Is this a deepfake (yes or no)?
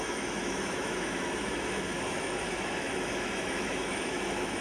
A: yes